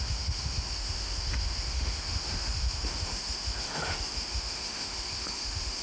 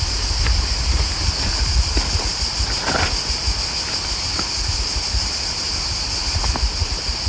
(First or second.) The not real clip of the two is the first